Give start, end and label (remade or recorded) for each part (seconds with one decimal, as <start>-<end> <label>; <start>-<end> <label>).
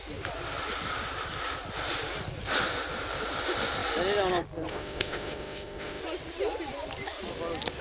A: 0.0-4.7 recorded; 4.7-6.0 remade; 6.0-7.8 recorded